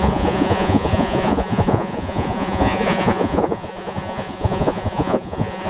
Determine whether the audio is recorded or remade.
remade